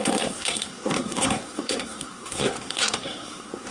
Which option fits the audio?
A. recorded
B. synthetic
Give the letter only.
B